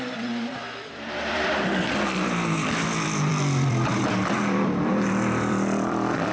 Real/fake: fake